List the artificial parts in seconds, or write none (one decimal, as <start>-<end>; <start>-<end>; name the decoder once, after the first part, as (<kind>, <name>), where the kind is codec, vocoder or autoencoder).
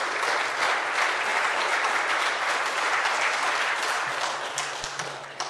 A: none